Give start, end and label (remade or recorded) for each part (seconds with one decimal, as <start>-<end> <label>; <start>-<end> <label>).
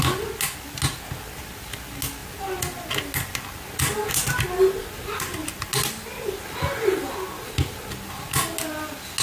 0.0-9.2 recorded